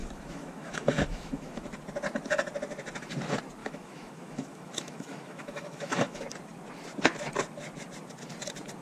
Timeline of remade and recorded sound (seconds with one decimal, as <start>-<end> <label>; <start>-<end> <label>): 0.0-1.7 remade; 1.7-3.6 recorded; 3.6-6.2 remade; 6.2-8.8 recorded